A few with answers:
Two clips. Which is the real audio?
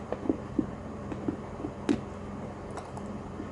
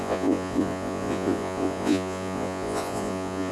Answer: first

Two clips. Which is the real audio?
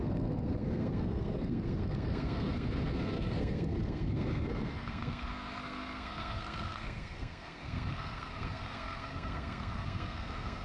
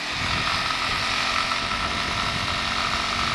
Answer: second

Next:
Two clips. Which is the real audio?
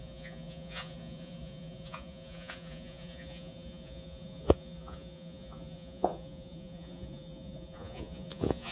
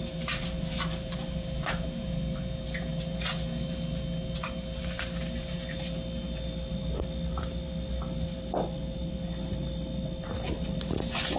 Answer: second